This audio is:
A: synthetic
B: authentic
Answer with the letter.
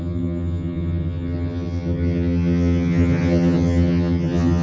A